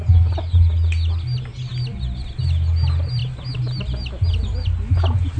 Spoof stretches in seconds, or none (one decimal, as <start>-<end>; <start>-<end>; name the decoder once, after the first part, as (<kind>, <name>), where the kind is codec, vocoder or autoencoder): none